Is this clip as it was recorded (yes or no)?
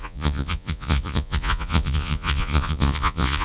no